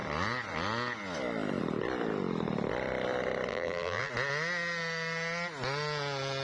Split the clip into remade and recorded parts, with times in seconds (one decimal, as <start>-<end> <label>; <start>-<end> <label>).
0.0-3.5 recorded; 3.5-4.1 remade; 4.1-6.4 recorded